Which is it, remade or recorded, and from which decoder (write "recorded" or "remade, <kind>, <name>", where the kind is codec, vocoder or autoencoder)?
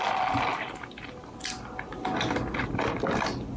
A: recorded